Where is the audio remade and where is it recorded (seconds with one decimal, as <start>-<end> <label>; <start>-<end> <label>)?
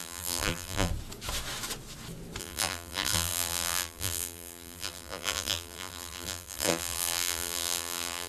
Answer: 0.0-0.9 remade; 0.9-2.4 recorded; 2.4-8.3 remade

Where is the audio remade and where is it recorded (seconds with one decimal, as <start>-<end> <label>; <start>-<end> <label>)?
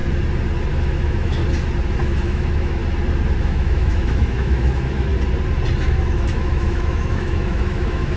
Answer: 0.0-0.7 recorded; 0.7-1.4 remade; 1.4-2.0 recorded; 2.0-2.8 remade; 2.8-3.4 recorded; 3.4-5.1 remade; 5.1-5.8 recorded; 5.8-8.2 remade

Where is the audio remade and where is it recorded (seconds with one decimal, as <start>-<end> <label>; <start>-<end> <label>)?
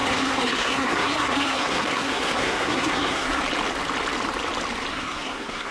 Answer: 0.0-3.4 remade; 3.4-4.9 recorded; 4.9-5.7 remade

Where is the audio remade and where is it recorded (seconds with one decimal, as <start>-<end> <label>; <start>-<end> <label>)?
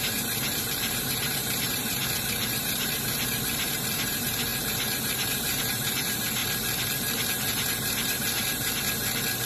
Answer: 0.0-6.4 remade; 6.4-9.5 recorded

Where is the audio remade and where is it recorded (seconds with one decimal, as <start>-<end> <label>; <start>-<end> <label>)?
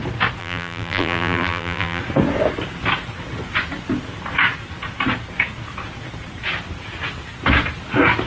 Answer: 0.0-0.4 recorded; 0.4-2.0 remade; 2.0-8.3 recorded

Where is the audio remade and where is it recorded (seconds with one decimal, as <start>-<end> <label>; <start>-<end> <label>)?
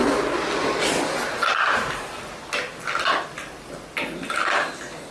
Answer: 0.0-5.1 recorded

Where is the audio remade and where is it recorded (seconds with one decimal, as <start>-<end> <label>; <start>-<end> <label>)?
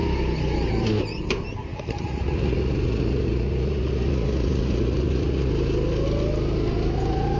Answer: 0.0-1.7 recorded; 1.7-5.5 remade; 5.5-7.4 recorded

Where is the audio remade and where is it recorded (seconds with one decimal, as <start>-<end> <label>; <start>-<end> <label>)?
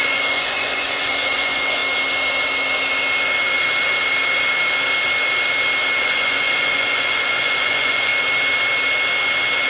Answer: 0.0-1.8 remade; 1.8-6.0 recorded; 6.0-8.1 remade; 8.1-9.7 recorded